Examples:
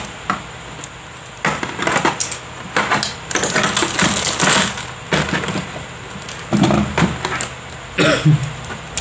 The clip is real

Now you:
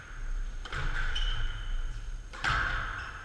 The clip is fake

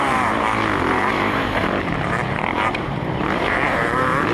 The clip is fake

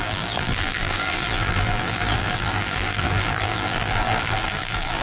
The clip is fake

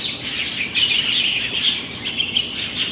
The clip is fake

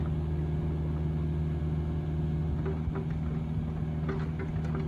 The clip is real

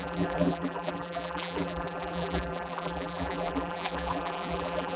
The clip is fake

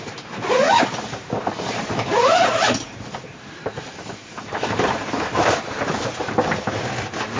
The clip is fake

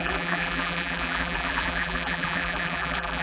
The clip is fake